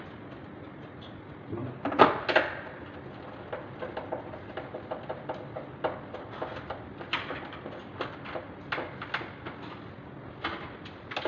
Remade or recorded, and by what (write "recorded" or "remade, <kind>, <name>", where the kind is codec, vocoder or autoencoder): recorded